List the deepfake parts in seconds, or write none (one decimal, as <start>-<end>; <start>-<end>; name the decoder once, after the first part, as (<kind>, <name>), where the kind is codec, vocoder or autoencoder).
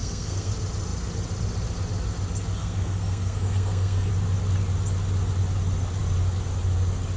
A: 0.0-0.5 (codec, SNAC); 2.6-4.1